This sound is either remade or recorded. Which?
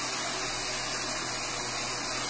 recorded